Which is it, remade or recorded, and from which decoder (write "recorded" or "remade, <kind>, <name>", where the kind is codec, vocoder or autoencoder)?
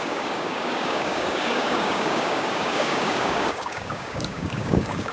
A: remade, codec, DAC